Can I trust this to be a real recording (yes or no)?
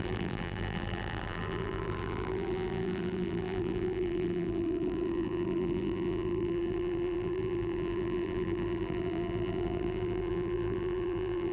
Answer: no